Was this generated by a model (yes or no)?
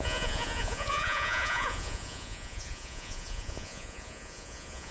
yes